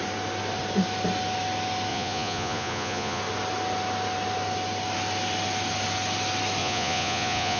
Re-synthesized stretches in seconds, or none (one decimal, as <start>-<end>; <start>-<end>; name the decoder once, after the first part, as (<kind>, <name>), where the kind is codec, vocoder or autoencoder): 1.9-3.2 (vocoder, Vocos); 6.6-7.6